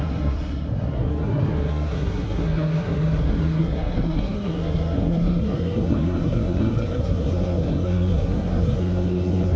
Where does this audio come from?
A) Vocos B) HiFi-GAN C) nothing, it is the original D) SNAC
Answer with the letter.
D